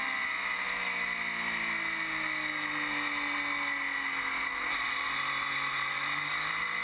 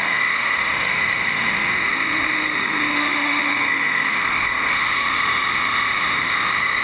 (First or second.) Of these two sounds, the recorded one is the first